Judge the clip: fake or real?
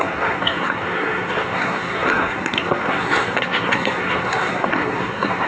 fake